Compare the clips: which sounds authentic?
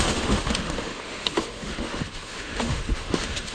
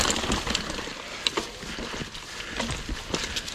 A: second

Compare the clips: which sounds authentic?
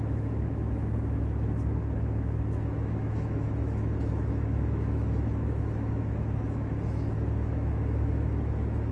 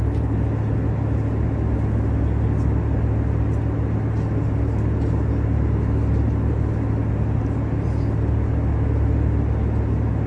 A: second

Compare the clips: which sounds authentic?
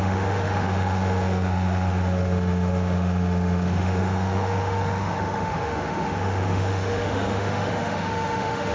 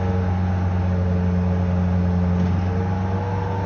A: second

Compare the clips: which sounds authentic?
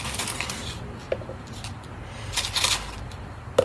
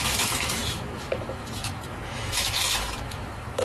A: first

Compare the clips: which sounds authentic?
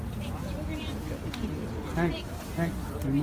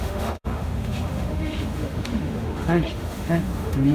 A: first